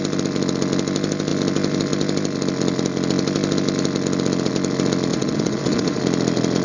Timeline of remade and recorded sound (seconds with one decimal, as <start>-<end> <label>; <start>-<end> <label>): 0.0-5.1 recorded; 5.1-6.0 remade; 6.0-6.6 recorded